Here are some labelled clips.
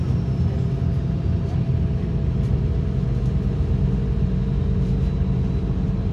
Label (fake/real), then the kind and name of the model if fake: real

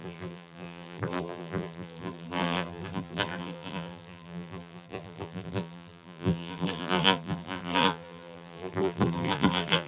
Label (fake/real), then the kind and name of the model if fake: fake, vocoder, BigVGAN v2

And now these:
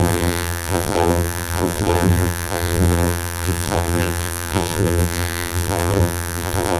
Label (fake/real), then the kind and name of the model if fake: fake, vocoder, BigVGAN v2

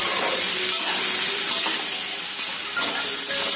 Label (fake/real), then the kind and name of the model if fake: real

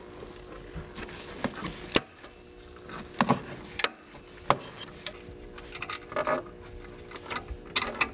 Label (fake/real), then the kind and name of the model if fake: real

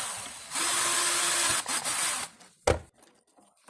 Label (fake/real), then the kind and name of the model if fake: real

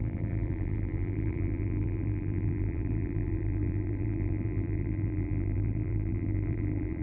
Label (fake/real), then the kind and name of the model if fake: fake, vocoder, BigVGAN v2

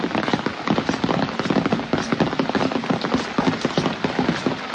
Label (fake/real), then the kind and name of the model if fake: real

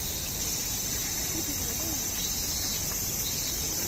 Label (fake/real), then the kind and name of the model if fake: real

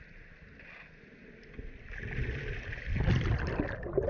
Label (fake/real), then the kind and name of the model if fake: real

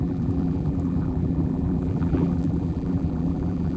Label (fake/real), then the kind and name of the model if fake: fake, vocoder, BigVGAN v2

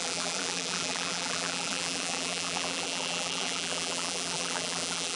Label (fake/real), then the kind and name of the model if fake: fake, vocoder, BigVGAN v2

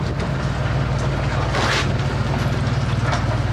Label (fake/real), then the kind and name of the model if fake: real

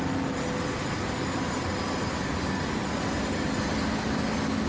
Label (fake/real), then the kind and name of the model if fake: real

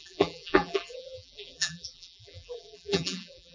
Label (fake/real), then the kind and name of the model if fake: fake, vocoder, BigVGAN v2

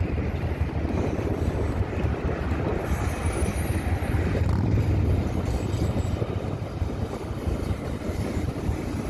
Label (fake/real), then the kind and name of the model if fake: real